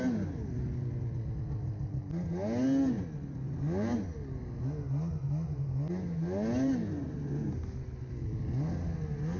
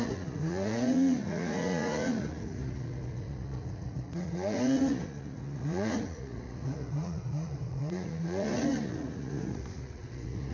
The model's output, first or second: second